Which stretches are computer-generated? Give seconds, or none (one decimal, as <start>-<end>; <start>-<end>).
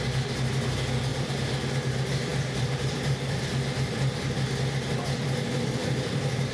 1.1-1.7; 2.3-4.0